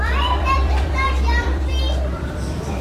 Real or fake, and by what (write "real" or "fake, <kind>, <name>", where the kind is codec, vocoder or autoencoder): fake, vocoder, BigVGAN v2